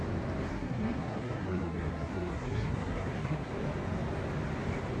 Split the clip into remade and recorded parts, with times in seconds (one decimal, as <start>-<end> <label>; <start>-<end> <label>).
0.0-0.5 recorded; 0.5-3.5 remade; 3.5-5.0 recorded